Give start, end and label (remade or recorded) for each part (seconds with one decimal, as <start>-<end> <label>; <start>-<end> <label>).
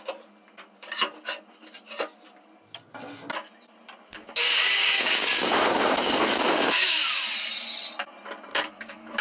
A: 0.0-4.1 recorded; 4.1-7.2 remade; 7.2-8.5 recorded; 8.5-9.2 remade